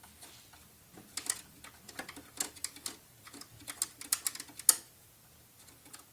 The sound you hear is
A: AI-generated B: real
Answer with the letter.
B